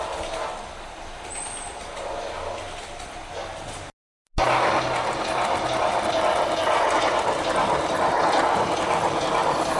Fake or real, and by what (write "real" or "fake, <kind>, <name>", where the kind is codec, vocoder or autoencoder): real